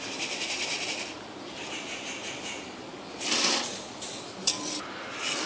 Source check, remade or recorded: recorded